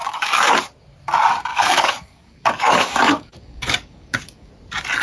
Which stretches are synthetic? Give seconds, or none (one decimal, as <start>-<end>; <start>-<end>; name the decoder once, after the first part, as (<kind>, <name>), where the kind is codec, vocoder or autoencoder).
0.0-0.6 (codec, DAC); 1.5-4.5

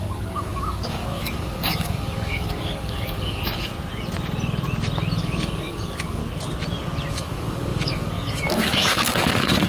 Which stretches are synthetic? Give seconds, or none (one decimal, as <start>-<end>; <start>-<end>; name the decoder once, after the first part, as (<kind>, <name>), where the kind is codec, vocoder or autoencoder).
0.0-3.7 (codec, DAC); 5.2-6.2; 7.1-9.7